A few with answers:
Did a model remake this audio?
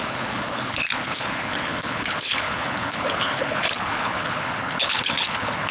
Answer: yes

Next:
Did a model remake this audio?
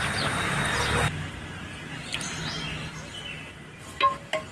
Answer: no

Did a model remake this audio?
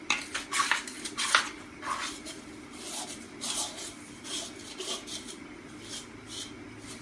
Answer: no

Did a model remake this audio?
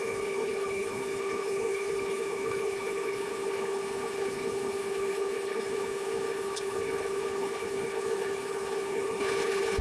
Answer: yes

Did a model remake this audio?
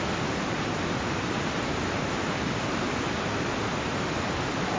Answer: no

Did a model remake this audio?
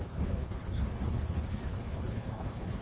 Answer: yes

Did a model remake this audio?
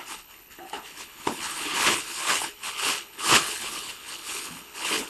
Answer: yes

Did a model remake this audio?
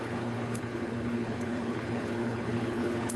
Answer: yes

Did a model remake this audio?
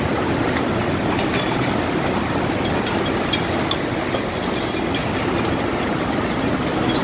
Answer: no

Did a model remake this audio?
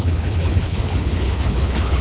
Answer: yes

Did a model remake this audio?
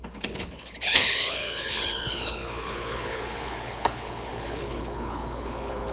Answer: yes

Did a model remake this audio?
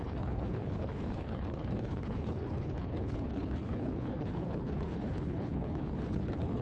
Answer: yes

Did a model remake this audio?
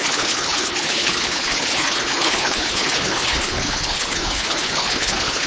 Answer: yes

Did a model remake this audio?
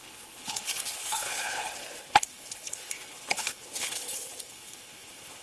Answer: yes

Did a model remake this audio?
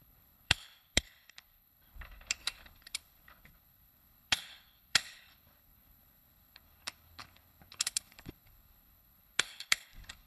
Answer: yes